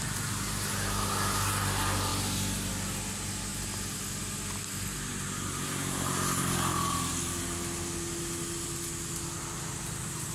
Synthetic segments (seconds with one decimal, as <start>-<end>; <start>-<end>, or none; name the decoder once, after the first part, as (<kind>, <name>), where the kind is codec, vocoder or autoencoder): none